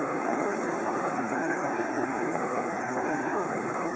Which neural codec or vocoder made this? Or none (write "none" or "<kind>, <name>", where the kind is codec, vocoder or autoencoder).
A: codec, SNAC